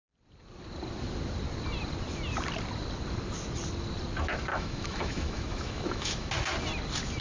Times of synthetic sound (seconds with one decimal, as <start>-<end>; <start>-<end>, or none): 4.5-6.3